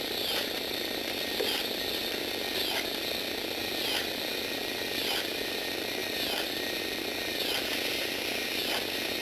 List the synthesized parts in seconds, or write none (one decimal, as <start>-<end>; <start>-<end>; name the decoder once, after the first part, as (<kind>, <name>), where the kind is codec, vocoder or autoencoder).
none